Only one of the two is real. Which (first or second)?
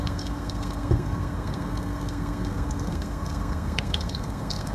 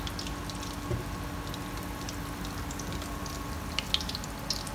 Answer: second